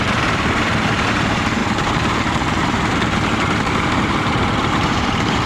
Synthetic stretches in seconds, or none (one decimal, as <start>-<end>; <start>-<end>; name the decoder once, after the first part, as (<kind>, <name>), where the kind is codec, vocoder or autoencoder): 0.0-5.5 (vocoder, BigVGAN v2)